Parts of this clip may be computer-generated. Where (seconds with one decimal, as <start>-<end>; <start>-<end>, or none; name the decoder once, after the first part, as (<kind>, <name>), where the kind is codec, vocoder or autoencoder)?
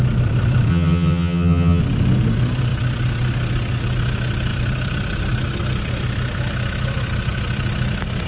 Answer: 0.7-1.8 (vocoder, HiFi-GAN)